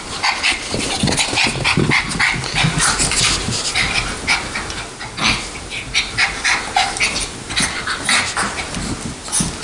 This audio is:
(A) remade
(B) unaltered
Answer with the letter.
B